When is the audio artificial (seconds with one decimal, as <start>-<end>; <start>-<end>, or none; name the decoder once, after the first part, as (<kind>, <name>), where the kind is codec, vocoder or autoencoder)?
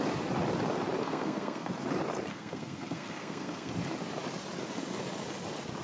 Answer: 1.0-1.7 (codec, SNAC); 2.3-3.7